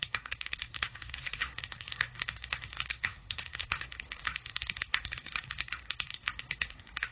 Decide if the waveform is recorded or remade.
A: remade